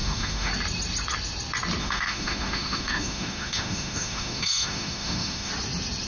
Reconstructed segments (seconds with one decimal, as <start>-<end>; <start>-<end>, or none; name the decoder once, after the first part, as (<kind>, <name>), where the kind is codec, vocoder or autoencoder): 0.0-0.5 (autoencoder, DAC-VAE); 1.8-5.5

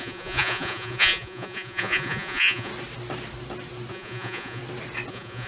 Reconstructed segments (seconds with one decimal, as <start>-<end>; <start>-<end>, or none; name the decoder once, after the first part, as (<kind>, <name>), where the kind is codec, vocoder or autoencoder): 0.0-2.7 (vocoder, Vocos); 3.9-4.6; 5.1-5.5

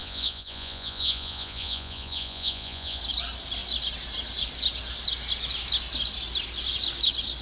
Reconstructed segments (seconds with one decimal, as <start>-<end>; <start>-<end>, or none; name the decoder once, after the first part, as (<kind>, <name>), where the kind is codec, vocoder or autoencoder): 0.0-3.0 (vocoder, Vocos)

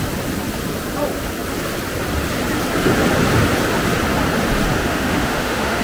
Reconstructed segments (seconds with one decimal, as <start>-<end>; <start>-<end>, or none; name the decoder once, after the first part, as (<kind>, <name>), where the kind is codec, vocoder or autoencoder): 4.8-5.8 (autoencoder, DAC-VAE)

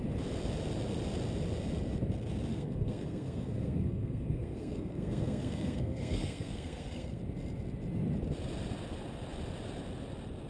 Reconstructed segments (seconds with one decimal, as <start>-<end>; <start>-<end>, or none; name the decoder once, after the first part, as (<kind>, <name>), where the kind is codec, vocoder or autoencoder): 2.5-7.2 (codec, SNAC)

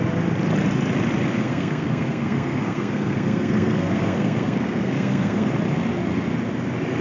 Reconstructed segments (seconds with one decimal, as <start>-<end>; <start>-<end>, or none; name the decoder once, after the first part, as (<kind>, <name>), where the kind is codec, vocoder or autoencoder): 1.3-5.5 (codec, SNAC)

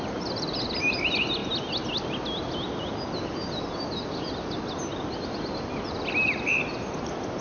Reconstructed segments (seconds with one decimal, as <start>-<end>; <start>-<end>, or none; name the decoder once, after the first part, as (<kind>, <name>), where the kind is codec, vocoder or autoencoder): none